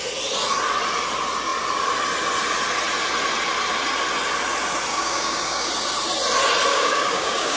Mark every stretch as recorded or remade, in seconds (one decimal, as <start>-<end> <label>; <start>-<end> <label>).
0.0-4.9 recorded; 4.9-5.7 remade; 5.7-6.7 recorded; 6.7-7.6 remade